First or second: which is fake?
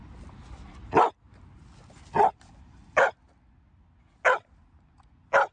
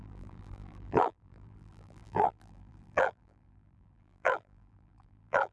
second